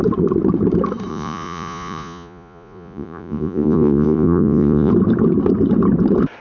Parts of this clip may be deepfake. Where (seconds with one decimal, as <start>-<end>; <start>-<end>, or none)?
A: 1.1-4.9